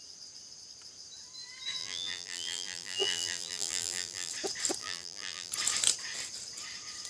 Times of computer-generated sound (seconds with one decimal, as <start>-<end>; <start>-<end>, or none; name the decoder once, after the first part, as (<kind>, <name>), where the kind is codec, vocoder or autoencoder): 1.8-4.3 (vocoder, BigVGAN v2); 4.8-5.5